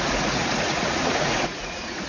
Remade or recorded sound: remade